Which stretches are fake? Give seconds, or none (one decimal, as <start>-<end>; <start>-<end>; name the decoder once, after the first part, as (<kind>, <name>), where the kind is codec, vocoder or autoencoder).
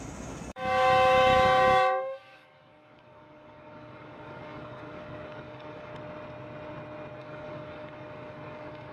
0.0-5.9 (codec, DAC); 7.2-8.9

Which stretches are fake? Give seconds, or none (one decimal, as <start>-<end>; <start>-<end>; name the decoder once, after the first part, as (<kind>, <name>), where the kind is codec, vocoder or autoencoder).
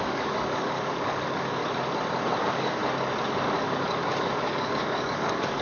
0.0-1.6 (codec, DAC); 2.4-2.8; 3.3-5.6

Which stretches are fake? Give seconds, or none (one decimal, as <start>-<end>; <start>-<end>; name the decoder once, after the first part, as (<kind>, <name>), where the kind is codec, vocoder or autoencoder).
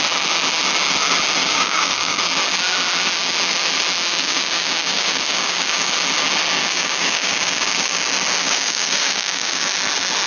1.4-2.2 (codec, DAC); 4.1-5.9; 6.6-8.0; 8.4-9.7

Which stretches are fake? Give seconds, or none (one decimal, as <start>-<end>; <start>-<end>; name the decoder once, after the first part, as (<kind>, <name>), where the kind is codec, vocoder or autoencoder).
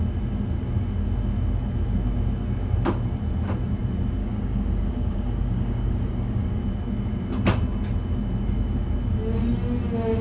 4.2-6.6 (codec, DAC)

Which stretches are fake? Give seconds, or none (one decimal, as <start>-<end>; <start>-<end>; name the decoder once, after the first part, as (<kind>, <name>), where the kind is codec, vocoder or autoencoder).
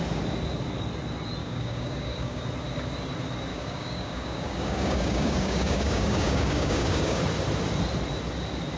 1.4-2.4 (codec, DAC); 3.5-7.2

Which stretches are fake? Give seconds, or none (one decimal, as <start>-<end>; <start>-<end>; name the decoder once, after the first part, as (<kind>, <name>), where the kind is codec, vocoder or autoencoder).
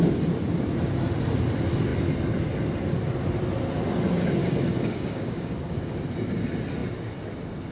4.4-6.0 (codec, DAC)